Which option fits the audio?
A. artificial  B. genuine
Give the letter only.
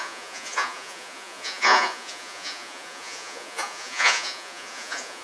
A